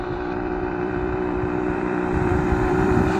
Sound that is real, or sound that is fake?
fake